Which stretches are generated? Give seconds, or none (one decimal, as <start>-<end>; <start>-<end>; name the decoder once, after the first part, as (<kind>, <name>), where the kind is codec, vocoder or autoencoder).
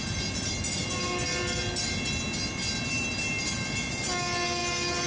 none